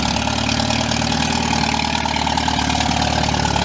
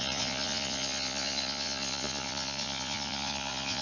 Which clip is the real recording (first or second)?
first